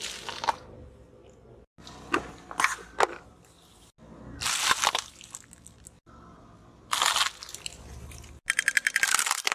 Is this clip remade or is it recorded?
recorded